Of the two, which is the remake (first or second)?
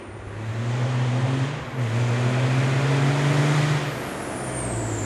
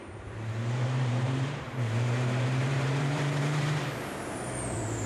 second